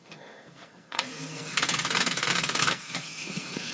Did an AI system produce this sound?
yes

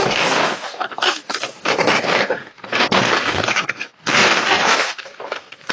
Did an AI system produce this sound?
yes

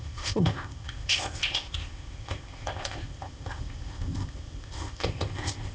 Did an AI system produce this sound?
yes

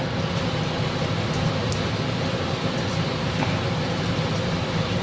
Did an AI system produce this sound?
no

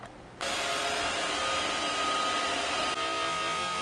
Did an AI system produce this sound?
no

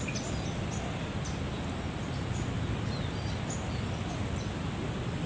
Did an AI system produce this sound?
no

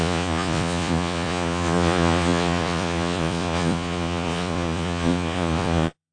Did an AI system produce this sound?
yes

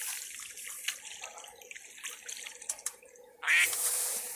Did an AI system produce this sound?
no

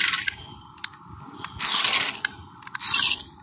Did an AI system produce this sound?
no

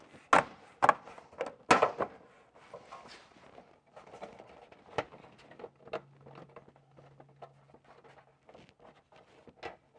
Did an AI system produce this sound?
no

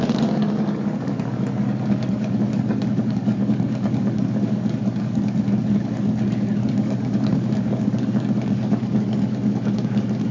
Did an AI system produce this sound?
yes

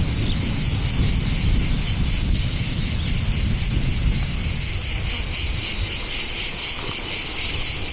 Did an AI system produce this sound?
no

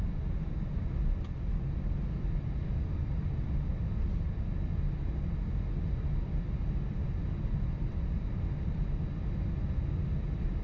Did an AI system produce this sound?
no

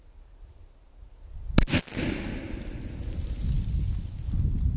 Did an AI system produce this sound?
no